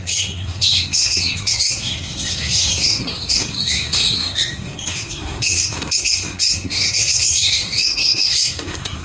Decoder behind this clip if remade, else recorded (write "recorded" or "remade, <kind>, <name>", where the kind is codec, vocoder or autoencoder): remade, codec, SNAC